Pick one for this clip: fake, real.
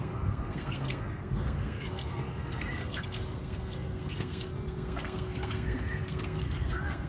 fake